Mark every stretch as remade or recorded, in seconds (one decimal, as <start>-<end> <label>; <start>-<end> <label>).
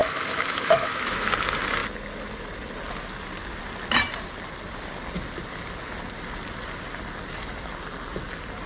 0.0-1.3 remade; 1.3-8.7 recorded